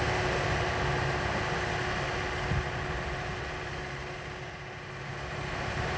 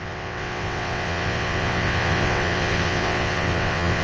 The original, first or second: first